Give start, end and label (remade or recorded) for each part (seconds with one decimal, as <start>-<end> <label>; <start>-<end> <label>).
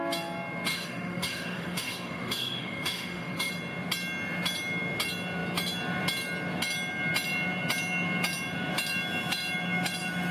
0.0-0.7 recorded; 0.7-3.5 remade; 3.5-10.3 recorded